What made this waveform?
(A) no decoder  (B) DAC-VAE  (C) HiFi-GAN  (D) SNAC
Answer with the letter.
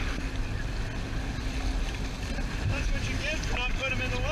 A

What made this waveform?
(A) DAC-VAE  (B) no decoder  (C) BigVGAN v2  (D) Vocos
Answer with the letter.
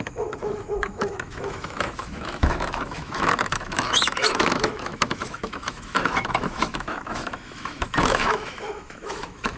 A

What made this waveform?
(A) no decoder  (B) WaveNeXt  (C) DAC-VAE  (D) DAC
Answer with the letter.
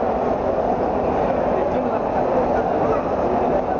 A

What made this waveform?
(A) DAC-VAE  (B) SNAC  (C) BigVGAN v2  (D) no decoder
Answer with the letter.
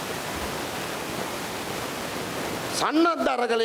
D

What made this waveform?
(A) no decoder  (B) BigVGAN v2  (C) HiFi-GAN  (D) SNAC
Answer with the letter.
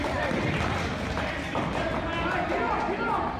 A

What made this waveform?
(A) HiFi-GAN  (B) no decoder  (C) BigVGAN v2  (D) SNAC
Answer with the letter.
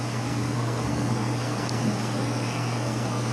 D